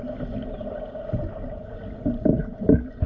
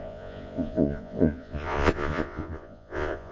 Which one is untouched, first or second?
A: first